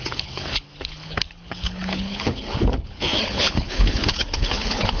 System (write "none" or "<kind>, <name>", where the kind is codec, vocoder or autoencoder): codec, HILCodec